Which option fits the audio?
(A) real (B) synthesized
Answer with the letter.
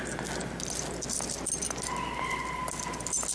A